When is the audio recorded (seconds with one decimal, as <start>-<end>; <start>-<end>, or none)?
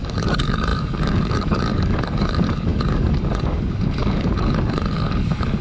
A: none